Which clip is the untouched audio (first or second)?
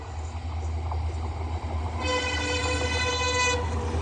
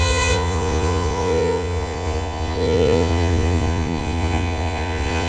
first